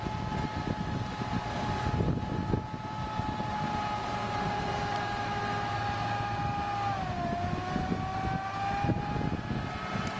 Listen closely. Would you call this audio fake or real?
real